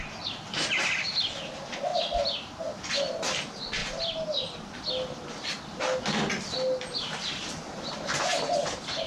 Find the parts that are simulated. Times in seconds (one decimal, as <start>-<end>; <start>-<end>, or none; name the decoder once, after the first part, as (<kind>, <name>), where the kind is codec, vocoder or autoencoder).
3.8-5.6 (vocoder, BigVGAN v2)